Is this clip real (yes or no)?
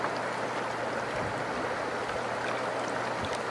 yes